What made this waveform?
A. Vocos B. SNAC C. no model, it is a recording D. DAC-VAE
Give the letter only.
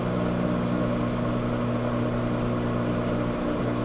C